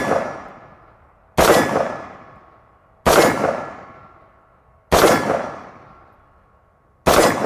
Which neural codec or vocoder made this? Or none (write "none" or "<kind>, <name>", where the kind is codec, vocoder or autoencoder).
none